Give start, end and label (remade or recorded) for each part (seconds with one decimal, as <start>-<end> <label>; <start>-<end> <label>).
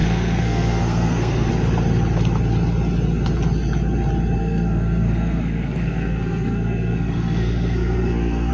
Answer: 0.0-1.5 remade; 1.5-4.4 recorded; 4.4-8.5 remade